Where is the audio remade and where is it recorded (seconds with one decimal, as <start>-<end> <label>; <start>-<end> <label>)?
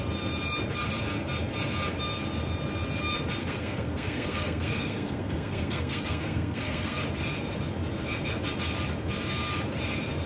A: 0.0-3.4 recorded; 3.4-7.0 remade; 7.0-10.3 recorded